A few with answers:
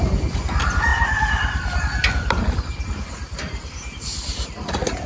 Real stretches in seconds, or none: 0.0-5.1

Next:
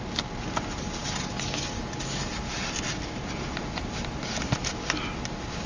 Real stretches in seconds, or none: 0.0-5.7

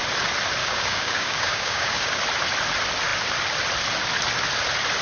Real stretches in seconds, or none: 0.0-0.6; 2.2-5.0

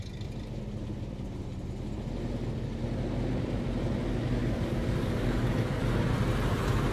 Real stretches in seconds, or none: 0.0-4.4; 5.8-6.9